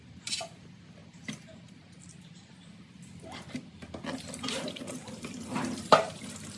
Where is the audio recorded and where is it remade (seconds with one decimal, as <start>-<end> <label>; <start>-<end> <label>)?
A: 0.0-1.0 recorded; 1.0-1.7 remade; 1.7-2.1 recorded; 2.1-6.1 remade; 6.1-6.6 recorded